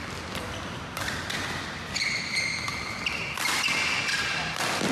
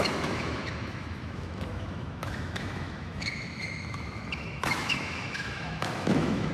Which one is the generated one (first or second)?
second